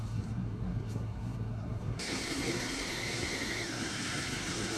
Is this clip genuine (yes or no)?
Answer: no